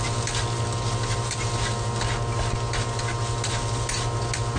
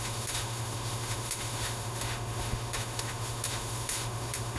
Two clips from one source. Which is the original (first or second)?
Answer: first